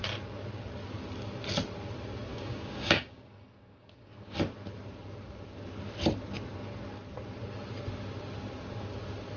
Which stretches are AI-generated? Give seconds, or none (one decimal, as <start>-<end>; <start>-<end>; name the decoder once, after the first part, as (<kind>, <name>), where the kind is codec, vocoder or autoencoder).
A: 2.3-4.4 (codec, DAC)